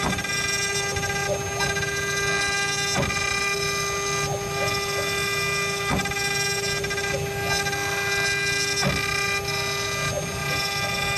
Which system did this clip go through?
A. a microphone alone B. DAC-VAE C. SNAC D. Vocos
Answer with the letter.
A